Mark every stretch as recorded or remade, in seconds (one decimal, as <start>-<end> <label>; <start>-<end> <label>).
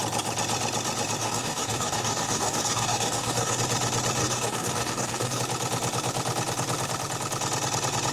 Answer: 0.0-1.2 recorded; 1.2-3.6 remade; 3.6-4.2 recorded; 4.2-5.4 remade; 5.4-8.1 recorded